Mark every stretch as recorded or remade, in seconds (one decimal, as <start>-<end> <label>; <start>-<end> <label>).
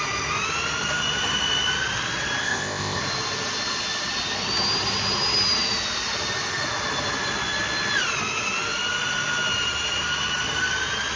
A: 0.0-2.4 recorded; 2.4-3.0 remade; 3.0-11.2 recorded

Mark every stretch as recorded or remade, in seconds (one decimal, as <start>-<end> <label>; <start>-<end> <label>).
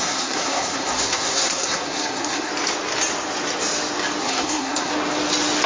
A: 0.0-2.5 remade; 2.5-4.2 recorded; 4.2-4.9 remade; 4.9-5.7 recorded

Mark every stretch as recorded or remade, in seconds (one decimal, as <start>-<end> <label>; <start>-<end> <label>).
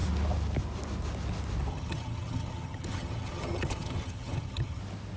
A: 0.0-1.7 recorded; 1.7-4.8 remade; 4.8-5.2 recorded